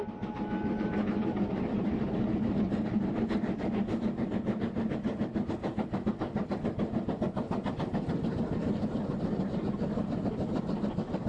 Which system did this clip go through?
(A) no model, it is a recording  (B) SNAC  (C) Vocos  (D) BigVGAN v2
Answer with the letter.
A